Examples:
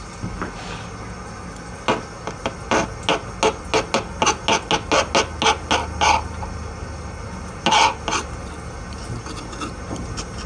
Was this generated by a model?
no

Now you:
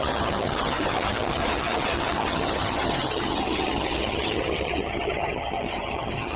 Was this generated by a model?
yes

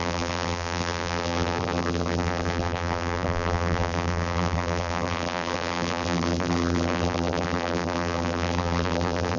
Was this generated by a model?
yes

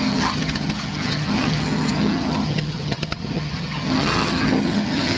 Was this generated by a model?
yes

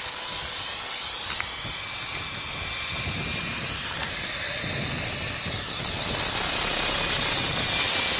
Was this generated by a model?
no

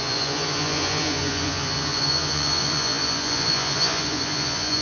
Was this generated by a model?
yes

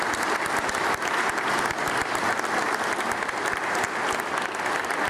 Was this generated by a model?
no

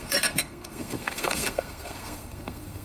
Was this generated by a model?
yes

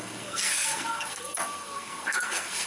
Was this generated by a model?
yes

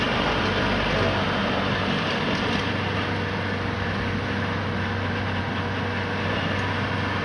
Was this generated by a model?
no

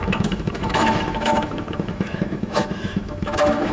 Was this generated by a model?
yes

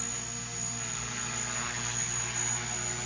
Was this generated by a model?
no